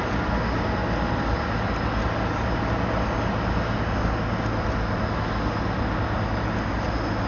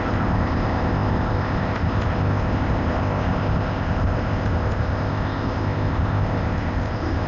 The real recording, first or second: first